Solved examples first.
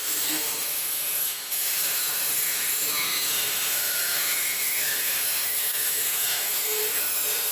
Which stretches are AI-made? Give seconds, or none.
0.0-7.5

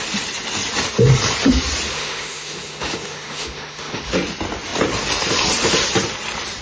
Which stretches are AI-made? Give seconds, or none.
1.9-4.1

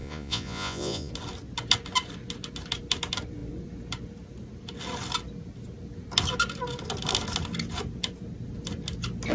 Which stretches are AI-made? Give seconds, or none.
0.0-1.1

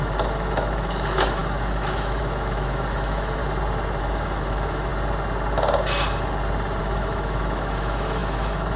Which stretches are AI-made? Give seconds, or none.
0.0-3.4; 4.0-4.9; 6.8-8.8